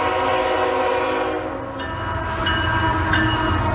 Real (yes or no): yes